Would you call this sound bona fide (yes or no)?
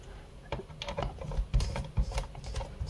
yes